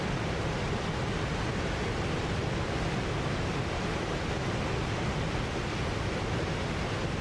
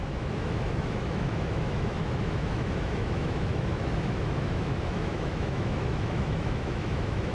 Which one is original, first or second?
first